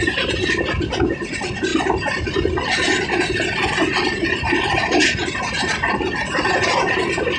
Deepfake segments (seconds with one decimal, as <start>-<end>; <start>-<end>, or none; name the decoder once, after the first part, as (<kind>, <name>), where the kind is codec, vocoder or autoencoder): none